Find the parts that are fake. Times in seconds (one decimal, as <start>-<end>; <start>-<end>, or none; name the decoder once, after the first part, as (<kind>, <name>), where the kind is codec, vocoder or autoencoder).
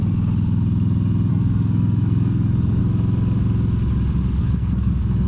1.3-2.8 (codec, SNAC); 4.4-5.3